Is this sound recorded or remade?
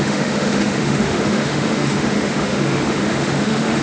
remade